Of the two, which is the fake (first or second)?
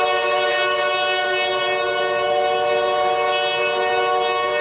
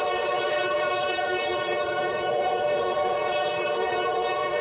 second